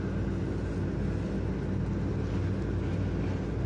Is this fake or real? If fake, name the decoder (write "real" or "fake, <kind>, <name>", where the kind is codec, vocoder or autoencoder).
real